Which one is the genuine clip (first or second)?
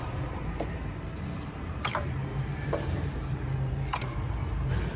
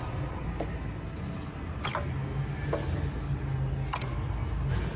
second